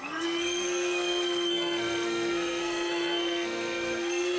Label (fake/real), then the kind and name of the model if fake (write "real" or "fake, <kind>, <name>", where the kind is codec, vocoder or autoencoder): fake, codec, SNAC